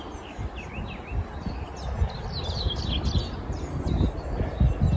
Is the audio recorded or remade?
recorded